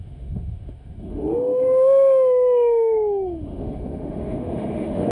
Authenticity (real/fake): fake